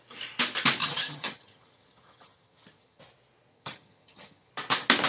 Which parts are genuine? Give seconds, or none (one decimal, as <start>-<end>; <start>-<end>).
0.0-0.8; 3.0-3.5; 4.5-5.1